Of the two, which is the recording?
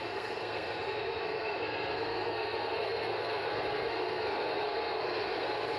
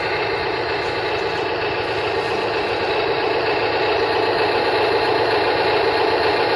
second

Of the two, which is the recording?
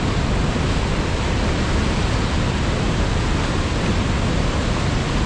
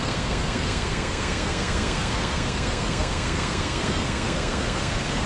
first